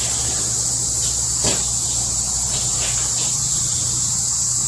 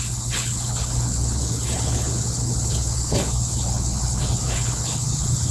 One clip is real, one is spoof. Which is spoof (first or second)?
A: second